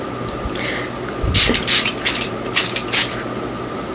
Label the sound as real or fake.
real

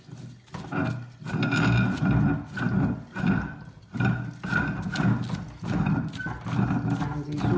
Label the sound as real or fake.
real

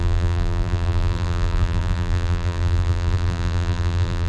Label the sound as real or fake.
fake